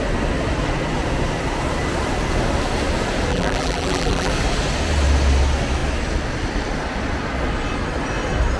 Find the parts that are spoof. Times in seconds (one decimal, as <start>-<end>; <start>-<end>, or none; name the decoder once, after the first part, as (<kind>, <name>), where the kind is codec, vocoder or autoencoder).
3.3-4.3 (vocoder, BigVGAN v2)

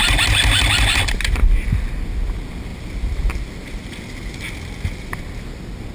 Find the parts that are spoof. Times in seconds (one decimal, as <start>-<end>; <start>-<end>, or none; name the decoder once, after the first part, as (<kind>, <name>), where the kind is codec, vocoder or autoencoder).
2.7-5.2 (vocoder, BigVGAN v2)

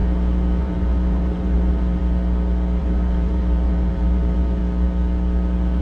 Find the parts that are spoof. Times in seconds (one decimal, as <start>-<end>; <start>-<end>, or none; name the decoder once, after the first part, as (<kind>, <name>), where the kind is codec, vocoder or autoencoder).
0.6-2.0 (vocoder, BigVGAN v2); 2.8-4.6

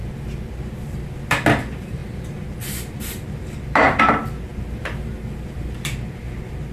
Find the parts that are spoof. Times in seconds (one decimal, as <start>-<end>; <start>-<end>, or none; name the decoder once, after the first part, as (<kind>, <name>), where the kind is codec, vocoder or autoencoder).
0.0-6.7 (vocoder, BigVGAN v2)

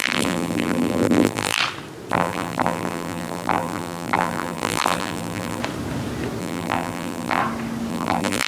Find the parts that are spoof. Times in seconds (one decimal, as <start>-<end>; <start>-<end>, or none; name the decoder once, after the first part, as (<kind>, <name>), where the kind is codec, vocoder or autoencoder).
0.0-1.6 (vocoder, BigVGAN v2); 2.1-5.6; 6.4-7.4; 7.9-8.5